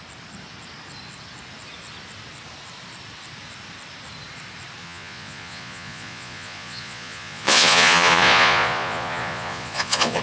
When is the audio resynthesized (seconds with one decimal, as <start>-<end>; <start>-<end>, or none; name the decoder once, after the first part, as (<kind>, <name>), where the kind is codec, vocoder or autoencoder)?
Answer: 4.8-10.2 (vocoder, Vocos)